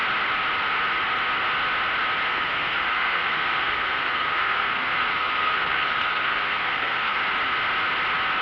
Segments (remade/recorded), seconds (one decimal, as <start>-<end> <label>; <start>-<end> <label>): 0.0-2.3 recorded; 2.3-7.2 remade; 7.2-8.4 recorded